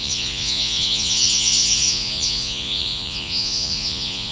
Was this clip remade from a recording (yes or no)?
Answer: yes